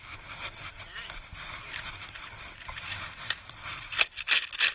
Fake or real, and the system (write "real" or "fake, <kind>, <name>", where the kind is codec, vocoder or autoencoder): real